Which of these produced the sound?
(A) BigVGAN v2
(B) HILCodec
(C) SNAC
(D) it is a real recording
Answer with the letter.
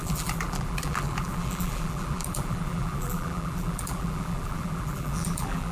A